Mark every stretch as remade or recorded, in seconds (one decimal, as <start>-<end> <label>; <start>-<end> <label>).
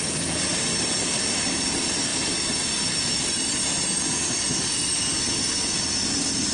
0.0-6.5 recorded